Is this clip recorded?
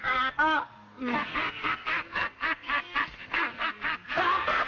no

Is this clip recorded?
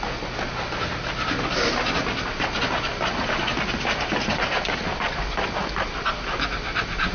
yes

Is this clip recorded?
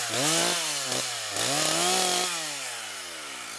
yes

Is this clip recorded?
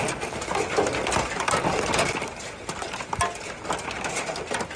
yes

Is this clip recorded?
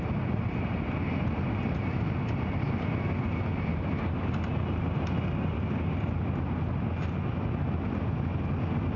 yes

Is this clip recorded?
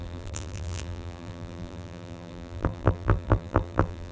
no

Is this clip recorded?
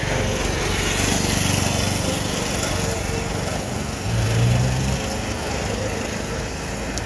yes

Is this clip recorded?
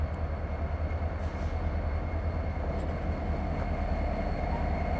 yes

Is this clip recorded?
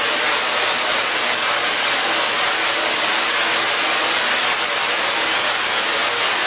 yes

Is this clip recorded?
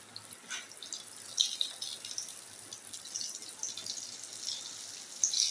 yes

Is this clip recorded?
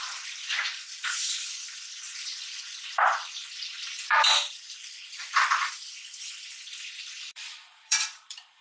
no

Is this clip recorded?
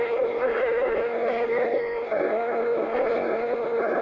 no